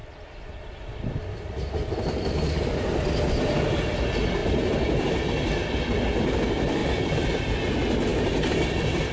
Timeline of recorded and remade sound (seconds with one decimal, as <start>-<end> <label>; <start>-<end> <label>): 0.0-2.3 remade; 2.3-6.8 recorded; 6.8-7.5 remade; 7.5-9.1 recorded